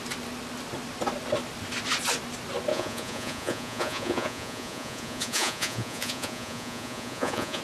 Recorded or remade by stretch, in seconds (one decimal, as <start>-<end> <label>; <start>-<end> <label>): 0.0-2.7 recorded; 2.7-7.6 remade